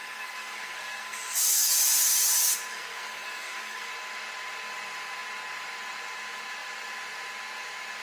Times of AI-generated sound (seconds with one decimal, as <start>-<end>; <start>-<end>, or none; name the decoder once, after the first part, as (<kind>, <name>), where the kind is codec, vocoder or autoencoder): 0.0-1.7 (codec, SNAC); 2.7-3.9